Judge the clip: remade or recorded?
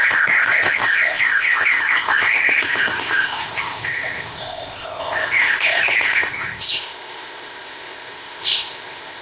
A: remade